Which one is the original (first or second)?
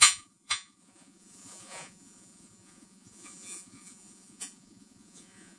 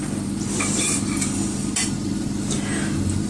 second